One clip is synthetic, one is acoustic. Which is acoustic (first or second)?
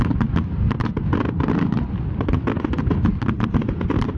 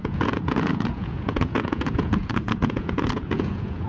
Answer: first